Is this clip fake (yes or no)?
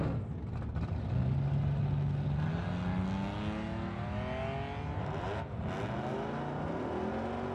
no